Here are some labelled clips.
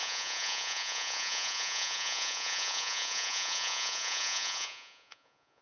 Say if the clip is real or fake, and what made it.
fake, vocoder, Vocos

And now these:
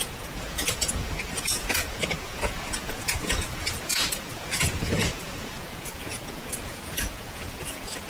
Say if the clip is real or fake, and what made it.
fake, vocoder, Vocos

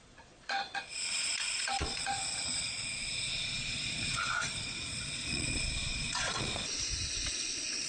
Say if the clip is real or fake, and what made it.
fake, vocoder, Vocos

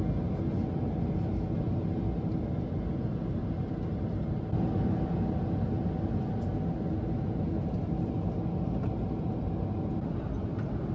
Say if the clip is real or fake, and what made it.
real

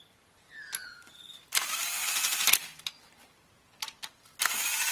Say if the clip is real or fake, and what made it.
real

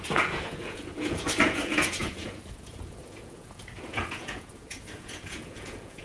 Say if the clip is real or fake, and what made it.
fake, vocoder, Vocos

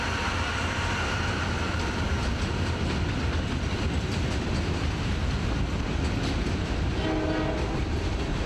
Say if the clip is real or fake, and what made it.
real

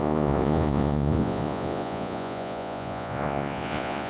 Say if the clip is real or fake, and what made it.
fake, vocoder, Vocos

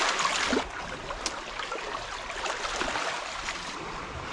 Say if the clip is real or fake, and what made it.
real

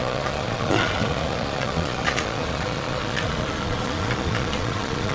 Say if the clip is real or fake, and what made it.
fake, vocoder, Vocos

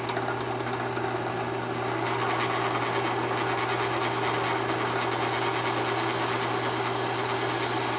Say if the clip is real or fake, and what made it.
real